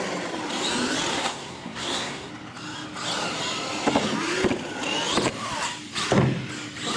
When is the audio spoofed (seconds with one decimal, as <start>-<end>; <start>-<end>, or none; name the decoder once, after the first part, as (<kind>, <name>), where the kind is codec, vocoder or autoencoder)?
1.1-2.3 (codec, SNAC)